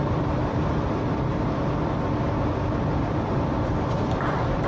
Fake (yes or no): yes